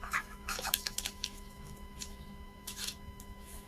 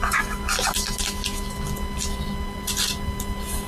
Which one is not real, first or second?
first